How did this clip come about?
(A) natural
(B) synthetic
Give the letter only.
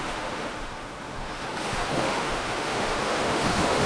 B